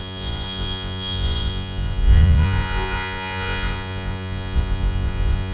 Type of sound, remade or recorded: remade